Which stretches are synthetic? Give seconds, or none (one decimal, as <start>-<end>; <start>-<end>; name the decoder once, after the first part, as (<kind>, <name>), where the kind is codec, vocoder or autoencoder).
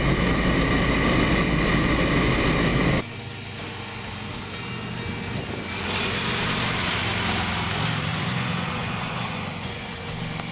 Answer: 8.1-10.0 (vocoder, Vocos)